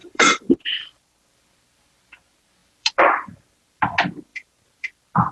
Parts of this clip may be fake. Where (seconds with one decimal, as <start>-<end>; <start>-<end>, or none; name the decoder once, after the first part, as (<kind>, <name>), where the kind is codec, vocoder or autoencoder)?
0.0-2.1 (vocoder, BigVGAN v2); 2.6-3.9; 4.3-5.3